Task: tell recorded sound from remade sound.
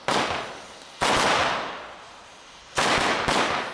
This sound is recorded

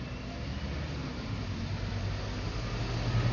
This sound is recorded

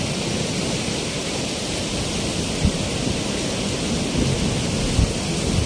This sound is recorded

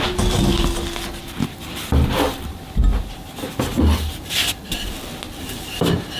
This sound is recorded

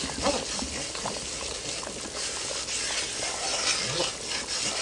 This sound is recorded